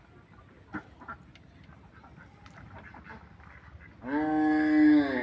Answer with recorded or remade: recorded